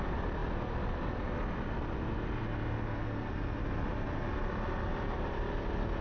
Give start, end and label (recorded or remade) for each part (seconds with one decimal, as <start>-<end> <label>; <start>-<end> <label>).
0.0-6.0 recorded